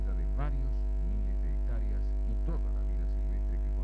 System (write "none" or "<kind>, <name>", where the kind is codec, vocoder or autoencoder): none